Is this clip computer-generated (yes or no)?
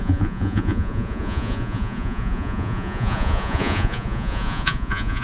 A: yes